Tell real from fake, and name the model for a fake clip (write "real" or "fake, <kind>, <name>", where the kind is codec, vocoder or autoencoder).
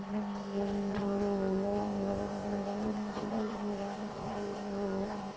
fake, codec, ZipCodec